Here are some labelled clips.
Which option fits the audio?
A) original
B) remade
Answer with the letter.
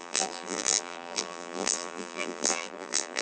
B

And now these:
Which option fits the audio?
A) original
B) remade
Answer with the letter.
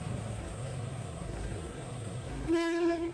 B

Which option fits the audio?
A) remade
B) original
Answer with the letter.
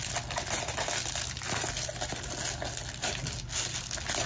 B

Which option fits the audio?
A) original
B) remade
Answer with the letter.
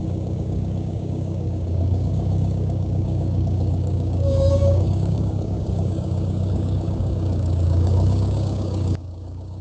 B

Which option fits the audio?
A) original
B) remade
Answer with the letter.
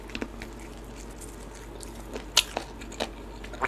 A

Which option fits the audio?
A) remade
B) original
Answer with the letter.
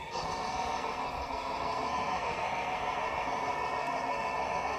A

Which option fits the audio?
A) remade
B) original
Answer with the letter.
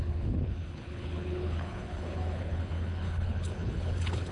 A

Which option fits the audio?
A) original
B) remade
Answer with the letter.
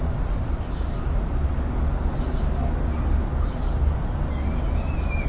A